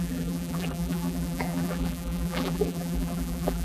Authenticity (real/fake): fake